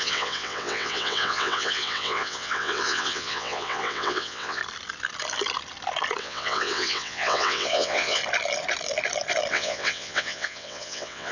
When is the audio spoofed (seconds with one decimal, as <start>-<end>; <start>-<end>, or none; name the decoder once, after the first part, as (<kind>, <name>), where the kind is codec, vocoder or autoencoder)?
0.0-4.6 (vocoder, WaveNeXt); 6.2-8.2; 9.5-11.3